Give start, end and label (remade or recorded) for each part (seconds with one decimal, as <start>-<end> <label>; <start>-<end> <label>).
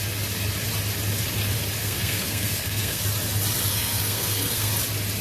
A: 0.0-1.8 recorded; 1.8-3.0 remade; 3.0-3.7 recorded; 3.7-4.7 remade; 4.7-5.2 recorded